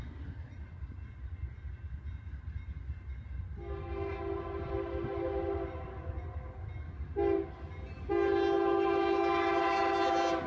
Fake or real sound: real